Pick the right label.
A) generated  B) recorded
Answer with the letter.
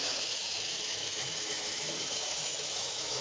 A